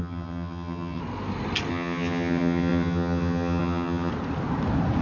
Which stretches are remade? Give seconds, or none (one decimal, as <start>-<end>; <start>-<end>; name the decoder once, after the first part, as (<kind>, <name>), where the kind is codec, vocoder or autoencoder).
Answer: 0.0-1.0 (vocoder, HiFi-GAN); 1.7-4.1